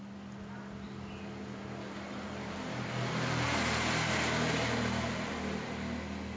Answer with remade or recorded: recorded